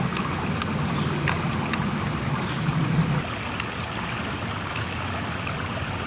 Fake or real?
real